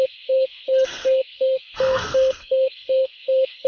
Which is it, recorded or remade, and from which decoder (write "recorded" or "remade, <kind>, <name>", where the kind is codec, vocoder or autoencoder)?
remade, codec, SNAC